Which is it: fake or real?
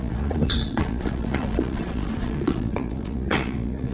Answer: fake